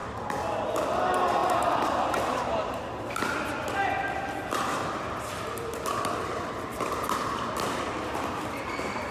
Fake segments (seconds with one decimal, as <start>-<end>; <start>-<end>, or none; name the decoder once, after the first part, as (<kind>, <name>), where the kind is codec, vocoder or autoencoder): 6.7-7.3 (vocoder, BigVGAN v2)